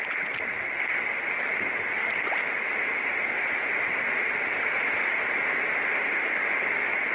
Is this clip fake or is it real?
real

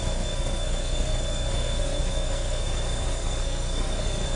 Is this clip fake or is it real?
fake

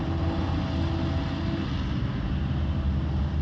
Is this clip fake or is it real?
real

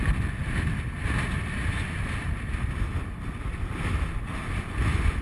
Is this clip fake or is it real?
real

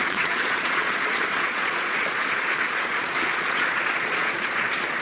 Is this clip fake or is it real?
fake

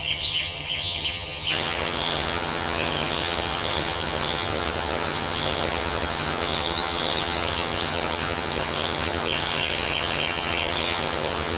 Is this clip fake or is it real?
fake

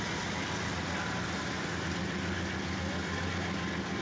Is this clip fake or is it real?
real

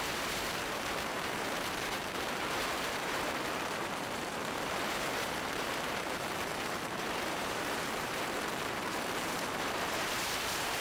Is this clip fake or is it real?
fake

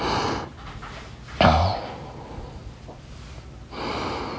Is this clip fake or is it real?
real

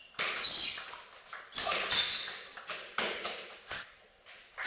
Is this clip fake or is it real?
real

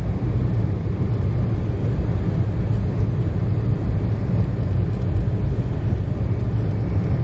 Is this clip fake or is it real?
real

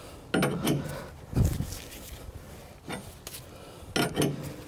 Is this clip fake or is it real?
real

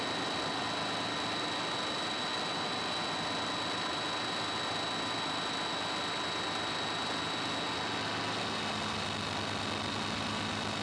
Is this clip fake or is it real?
real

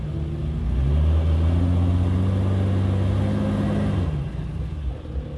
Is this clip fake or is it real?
real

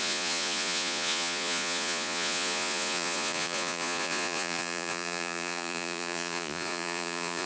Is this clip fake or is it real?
fake